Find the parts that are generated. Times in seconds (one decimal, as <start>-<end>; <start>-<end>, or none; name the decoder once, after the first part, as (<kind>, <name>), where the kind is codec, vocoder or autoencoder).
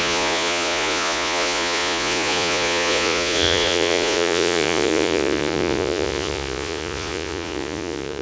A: 0.0-8.2 (vocoder, Vocos)